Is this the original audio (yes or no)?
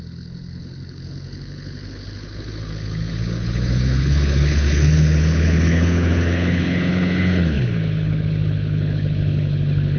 no